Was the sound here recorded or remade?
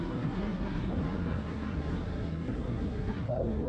remade